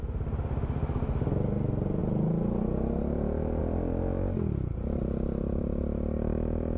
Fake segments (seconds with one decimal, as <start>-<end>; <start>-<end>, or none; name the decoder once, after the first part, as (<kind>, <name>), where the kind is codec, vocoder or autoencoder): none